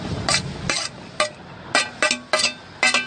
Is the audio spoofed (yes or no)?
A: no